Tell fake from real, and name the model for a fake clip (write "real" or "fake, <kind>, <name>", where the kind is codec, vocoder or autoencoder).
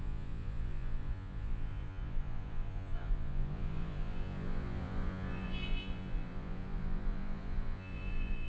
fake, vocoder, Vocos